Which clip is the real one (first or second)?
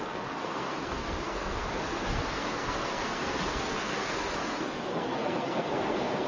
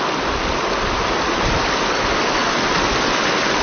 second